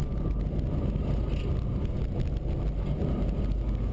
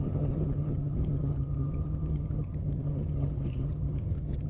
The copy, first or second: second